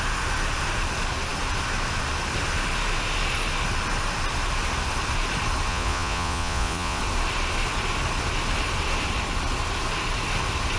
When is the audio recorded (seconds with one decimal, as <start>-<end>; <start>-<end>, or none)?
0.0-5.7; 7.0-10.8